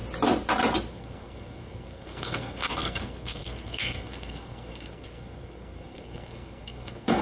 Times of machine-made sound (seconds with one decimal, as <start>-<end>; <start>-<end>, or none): 0.9-7.2